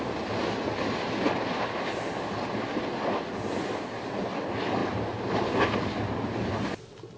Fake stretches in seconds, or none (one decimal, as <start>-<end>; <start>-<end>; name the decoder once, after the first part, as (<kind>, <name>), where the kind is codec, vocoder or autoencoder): none